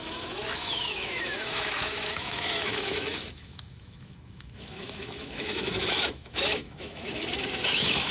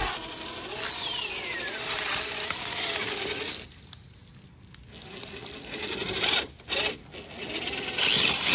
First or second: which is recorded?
second